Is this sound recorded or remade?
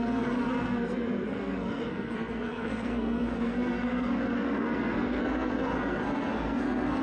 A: remade